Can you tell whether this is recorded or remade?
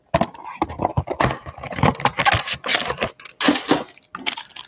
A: recorded